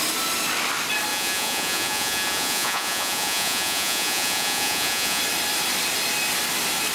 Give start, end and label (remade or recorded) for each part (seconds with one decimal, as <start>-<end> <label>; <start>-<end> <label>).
0.0-1.1 recorded; 1.1-5.2 remade; 5.2-6.9 recorded